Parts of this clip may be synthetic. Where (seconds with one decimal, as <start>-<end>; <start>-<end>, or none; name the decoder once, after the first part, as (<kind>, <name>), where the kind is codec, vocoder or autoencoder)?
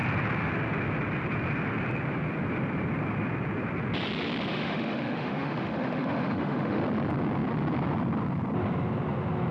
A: 4.5-6.8 (autoencoder, DAC-VAE)